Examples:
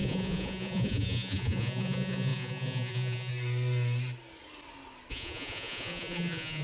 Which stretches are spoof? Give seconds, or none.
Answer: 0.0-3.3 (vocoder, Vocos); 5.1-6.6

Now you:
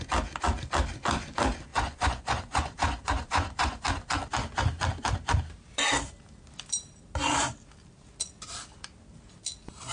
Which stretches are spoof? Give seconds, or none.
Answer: 1.7-3.8 (vocoder, Vocos)

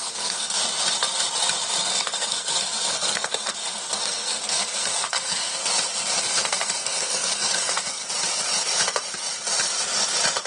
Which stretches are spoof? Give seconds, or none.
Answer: 0.0-0.6 (codec, SNAC); 1.7-5.6; 6.2-8.0

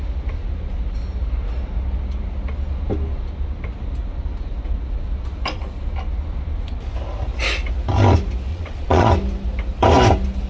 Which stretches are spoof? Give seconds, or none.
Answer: 8.5-9.1 (vocoder, Vocos)

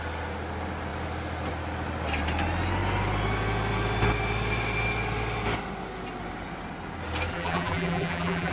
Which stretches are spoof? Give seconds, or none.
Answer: 7.3-8.5 (vocoder, BigVGAN v2)

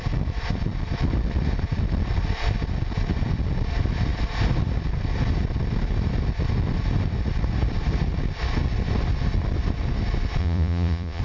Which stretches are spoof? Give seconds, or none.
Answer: 10.4-11.2 (vocoder, Vocos)